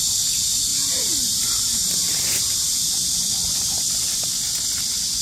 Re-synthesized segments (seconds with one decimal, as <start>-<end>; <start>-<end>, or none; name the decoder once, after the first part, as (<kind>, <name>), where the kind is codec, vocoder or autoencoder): 0.7-2.9 (vocoder, BigVGAN v2)